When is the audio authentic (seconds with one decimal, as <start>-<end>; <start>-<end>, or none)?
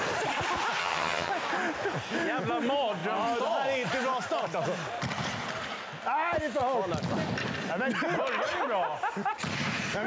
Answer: 0.0-0.8; 1.3-10.1